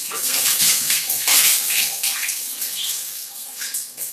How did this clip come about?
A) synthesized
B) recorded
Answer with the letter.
A